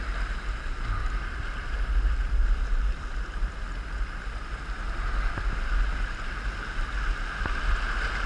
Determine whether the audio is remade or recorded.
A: recorded